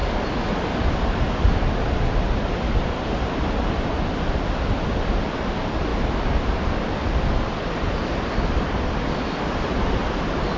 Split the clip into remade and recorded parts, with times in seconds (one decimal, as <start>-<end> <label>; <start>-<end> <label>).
0.0-10.6 recorded